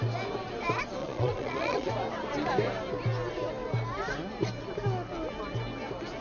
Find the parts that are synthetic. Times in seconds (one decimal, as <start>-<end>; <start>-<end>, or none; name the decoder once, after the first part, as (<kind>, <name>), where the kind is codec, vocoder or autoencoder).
1.0-1.9 (vocoder, Vocos)